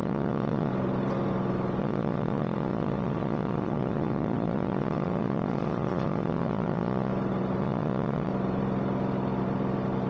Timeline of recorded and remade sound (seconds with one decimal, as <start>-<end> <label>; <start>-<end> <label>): 0.0-0.7 remade; 0.7-1.8 recorded; 1.8-7.1 remade; 7.1-7.6 recorded; 7.6-8.3 remade; 8.3-10.1 recorded